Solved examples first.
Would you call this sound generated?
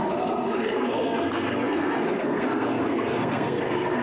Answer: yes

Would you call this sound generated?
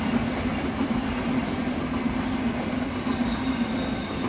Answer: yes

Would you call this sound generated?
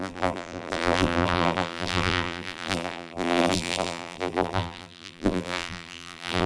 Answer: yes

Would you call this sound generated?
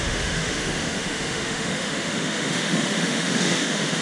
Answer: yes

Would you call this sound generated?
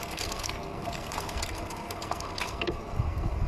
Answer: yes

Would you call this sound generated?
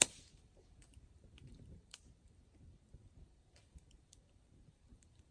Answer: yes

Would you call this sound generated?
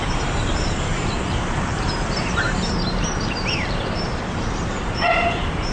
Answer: yes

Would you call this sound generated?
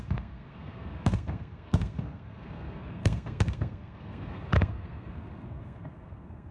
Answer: yes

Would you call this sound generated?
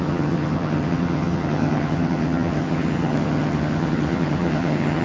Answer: yes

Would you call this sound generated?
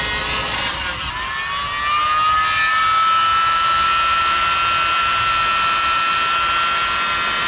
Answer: no